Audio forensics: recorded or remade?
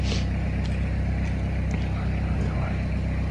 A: recorded